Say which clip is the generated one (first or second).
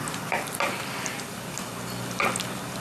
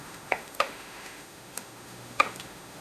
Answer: second